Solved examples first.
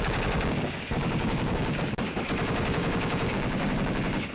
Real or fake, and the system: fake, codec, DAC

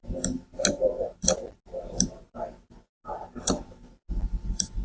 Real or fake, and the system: real